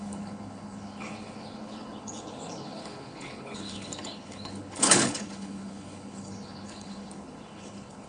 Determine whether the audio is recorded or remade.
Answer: remade